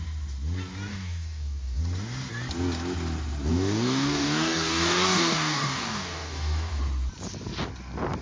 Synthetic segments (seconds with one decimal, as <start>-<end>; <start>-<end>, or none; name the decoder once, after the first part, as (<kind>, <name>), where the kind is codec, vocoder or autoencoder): 0.9-1.8 (codec, DAC); 3.5-6.8